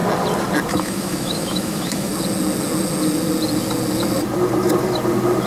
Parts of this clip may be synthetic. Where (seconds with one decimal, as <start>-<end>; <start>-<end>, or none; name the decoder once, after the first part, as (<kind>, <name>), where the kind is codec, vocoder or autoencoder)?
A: 0.6-2.1 (autoencoder, DAC-VAE)